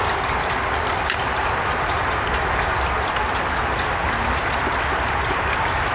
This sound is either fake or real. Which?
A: real